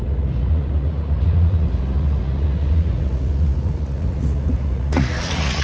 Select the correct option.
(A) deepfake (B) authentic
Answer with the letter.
A